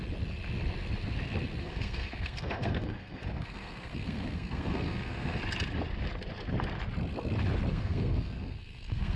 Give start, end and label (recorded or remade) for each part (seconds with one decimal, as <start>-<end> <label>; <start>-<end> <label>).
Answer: 0.0-1.6 recorded; 1.6-5.4 remade; 5.4-7.7 recorded; 7.7-9.2 remade

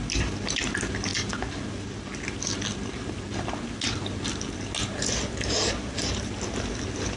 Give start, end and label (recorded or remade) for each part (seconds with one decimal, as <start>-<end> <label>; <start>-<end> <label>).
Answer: 0.0-7.2 recorded

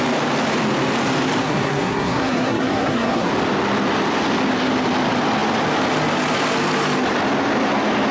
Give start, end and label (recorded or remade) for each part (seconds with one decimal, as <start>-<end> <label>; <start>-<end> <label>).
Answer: 0.0-1.4 recorded; 1.4-3.3 remade; 3.3-8.1 recorded

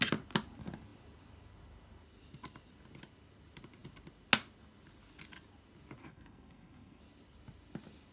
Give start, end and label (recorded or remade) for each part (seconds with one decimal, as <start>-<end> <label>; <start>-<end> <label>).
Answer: 0.0-6.0 recorded; 6.0-7.0 remade; 7.0-8.1 recorded

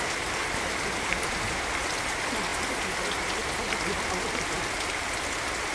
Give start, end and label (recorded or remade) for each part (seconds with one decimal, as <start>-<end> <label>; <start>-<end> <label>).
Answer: 0.0-5.7 recorded

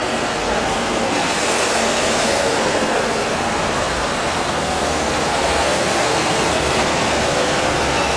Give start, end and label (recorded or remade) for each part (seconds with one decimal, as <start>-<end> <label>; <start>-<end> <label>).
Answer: 0.0-8.2 remade

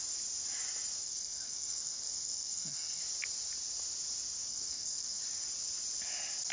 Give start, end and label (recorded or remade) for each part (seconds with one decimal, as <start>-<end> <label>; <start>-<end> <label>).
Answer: 0.0-1.0 recorded; 1.0-3.0 remade; 3.0-4.5 recorded; 4.5-5.2 remade; 5.2-6.5 recorded